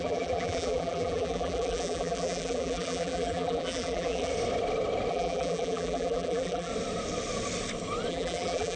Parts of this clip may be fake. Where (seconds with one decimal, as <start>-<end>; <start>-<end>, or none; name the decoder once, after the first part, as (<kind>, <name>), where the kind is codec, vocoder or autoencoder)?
0.0-4.3 (vocoder, BigVGAN v2); 5.1-6.7; 8.1-8.8